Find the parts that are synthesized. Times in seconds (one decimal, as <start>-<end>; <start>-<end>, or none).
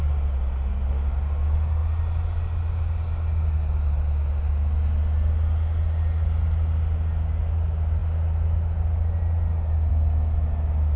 none